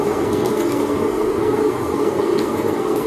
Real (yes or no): no